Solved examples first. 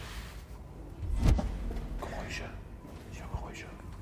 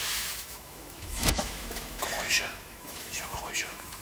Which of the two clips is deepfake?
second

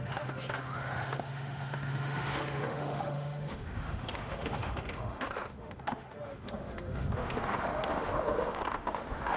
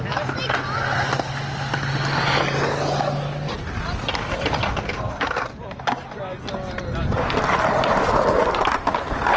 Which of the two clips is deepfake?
first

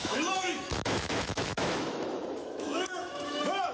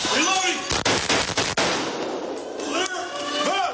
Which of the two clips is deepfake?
first